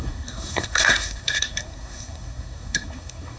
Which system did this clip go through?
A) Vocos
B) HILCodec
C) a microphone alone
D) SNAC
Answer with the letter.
D